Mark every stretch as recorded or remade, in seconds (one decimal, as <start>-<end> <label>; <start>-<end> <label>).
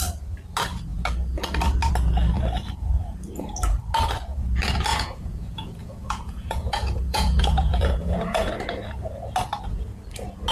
0.0-4.9 recorded; 4.9-8.5 remade; 8.5-10.5 recorded